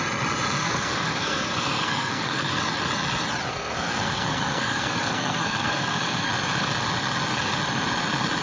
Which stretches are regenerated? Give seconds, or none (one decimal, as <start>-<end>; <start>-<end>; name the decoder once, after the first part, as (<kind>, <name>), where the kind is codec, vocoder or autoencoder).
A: 0.6-2.6 (codec, SNAC); 3.5-6.3